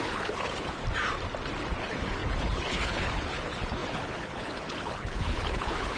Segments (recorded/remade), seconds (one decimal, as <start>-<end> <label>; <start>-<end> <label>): 0.0-0.8 remade; 0.8-1.8 recorded; 1.8-6.0 remade